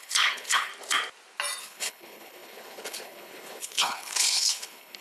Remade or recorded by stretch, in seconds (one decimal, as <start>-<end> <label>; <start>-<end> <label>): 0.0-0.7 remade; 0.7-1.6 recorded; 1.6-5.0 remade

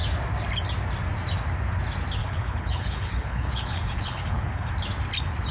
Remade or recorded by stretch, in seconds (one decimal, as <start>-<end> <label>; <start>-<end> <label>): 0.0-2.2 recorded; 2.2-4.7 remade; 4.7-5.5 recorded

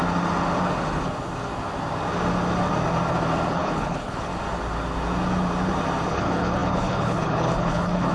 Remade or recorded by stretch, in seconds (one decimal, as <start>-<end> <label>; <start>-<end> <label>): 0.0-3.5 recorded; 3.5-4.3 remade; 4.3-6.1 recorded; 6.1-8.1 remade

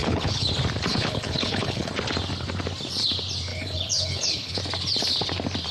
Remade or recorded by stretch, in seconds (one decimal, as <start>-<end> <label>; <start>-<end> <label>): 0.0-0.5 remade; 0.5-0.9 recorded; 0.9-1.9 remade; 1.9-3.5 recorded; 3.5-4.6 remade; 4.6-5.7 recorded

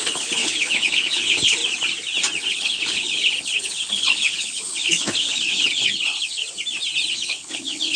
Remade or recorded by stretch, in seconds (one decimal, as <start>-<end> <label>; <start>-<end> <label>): 0.0-1.6 remade; 1.6-2.5 recorded; 2.5-6.4 remade; 6.4-7.1 recorded; 7.1-8.0 remade

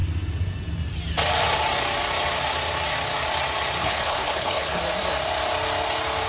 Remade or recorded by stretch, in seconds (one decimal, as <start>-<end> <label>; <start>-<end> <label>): 0.0-3.8 recorded; 3.8-4.8 remade; 4.8-6.3 recorded